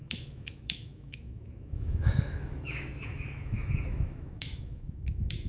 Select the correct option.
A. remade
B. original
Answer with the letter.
A